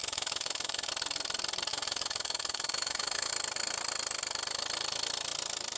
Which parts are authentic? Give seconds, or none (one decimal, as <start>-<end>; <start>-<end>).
0.9-1.7; 3.3-5.8